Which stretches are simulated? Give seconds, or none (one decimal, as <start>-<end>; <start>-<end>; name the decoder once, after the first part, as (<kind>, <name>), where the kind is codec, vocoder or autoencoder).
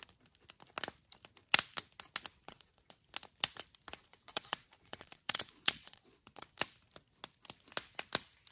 2.4-3.0 (vocoder, Vocos); 4.0-6.6